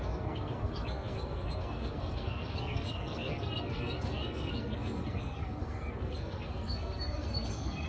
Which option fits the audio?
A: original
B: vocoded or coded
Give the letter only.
B